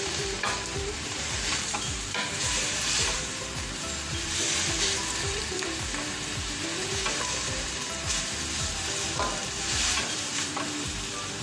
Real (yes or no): no